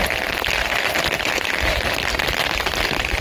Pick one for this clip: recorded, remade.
recorded